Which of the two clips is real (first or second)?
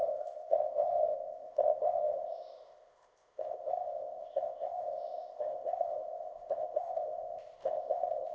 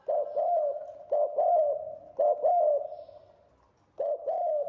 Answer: second